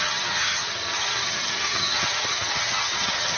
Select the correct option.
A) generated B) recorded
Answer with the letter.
A